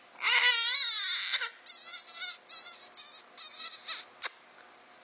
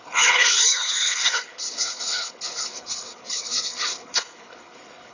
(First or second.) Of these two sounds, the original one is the first